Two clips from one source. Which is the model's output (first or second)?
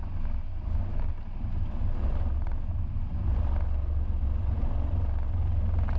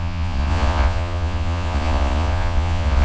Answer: second